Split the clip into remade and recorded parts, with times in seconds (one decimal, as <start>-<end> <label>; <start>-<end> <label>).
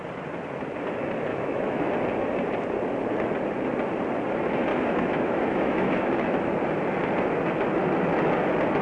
0.0-1.3 recorded; 1.3-1.9 remade; 1.9-4.7 recorded; 4.7-6.5 remade; 6.5-8.8 recorded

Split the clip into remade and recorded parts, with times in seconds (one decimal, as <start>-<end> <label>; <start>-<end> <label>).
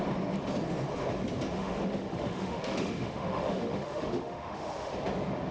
0.0-1.6 recorded; 1.6-4.9 remade; 4.9-5.5 recorded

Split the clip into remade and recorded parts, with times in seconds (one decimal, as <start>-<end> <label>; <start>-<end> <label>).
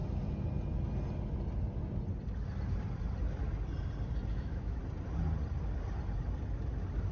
0.0-4.3 recorded; 4.3-4.8 remade; 4.8-7.1 recorded